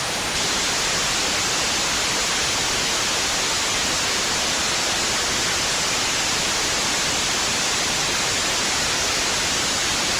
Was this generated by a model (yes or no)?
no